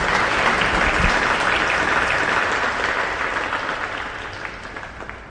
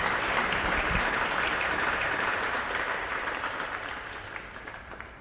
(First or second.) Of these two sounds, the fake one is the second